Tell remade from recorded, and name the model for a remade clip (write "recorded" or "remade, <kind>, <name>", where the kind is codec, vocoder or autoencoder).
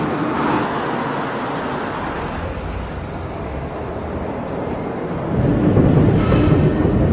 recorded